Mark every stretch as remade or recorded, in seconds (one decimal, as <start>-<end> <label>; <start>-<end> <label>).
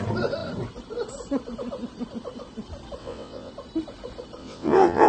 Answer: 0.0-3.0 recorded; 3.0-3.5 remade; 3.5-4.4 recorded; 4.4-5.1 remade